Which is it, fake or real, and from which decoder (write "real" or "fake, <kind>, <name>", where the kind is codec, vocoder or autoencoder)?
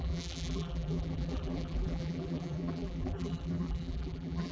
fake, vocoder, BigVGAN v2